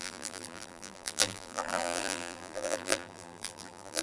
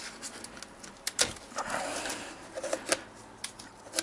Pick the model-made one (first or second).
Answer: first